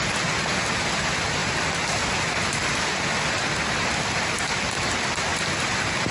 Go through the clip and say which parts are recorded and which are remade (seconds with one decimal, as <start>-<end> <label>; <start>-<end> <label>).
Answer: 0.0-6.1 recorded